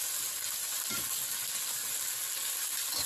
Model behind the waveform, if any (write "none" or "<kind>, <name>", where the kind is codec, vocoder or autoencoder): none